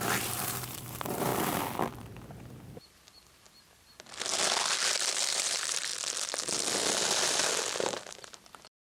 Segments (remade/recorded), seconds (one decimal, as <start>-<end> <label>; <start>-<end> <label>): 0.0-1.3 remade; 1.3-5.1 recorded; 5.1-5.9 remade; 5.9-7.8 recorded; 7.8-8.9 remade